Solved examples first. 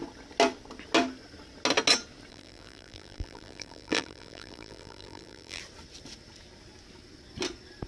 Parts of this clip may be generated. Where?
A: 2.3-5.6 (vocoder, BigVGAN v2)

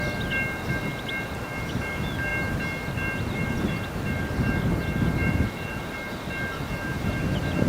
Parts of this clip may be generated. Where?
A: 5.2-5.9 (vocoder, Vocos)

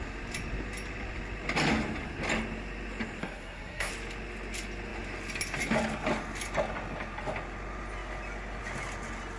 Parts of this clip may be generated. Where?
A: 3.2-3.9 (codec, SNAC)

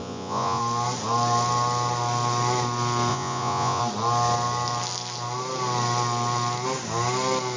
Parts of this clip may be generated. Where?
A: 0.0-0.6 (vocoder, Vocos); 3.1-3.8

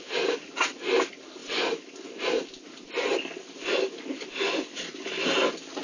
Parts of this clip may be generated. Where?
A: 1.4-4.9 (vocoder, BigVGAN v2)

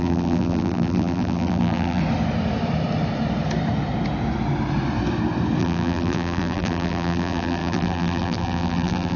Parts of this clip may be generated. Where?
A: 0.0-2.0 (vocoder, BigVGAN v2); 5.6-9.2

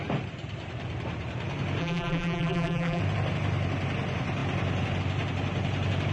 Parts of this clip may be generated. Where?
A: 1.8-3.0 (vocoder, BigVGAN v2)